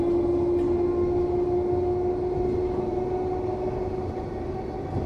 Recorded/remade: recorded